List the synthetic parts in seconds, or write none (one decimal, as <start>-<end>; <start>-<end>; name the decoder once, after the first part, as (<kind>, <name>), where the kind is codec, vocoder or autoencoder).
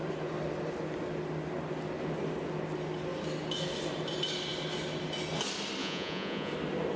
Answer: 5.8-6.5 (vocoder, Vocos)